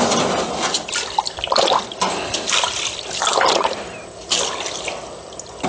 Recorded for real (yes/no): yes